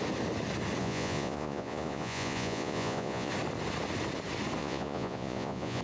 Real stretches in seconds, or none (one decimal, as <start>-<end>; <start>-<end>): 0.0-0.8; 3.3-4.6

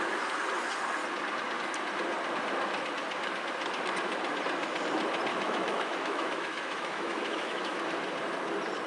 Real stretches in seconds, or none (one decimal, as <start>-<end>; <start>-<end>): 0.0-5.3; 7.8-8.9